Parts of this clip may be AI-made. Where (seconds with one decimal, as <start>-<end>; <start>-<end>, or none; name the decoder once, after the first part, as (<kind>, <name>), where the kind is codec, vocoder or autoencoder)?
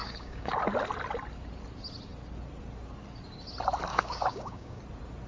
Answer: 0.0-0.5 (codec, DAC); 3.9-4.8